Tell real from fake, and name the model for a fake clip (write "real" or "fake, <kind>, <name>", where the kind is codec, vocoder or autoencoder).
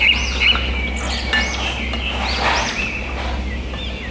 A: real